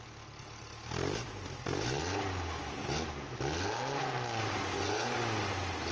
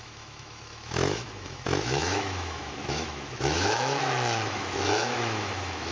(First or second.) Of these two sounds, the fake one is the second